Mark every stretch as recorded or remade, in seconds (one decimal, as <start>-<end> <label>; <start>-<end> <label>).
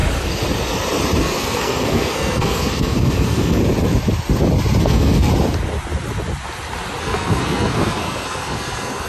0.0-1.2 recorded; 1.2-3.6 remade; 3.6-4.8 recorded; 4.8-5.3 remade; 5.3-7.0 recorded; 7.0-9.1 remade